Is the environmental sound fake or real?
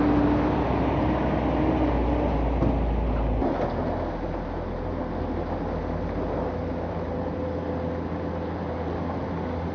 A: real